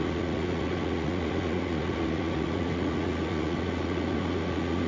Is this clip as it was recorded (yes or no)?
no